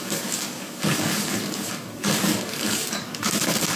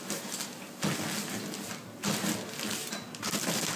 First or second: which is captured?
second